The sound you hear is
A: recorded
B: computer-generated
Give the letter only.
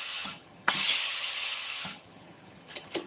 B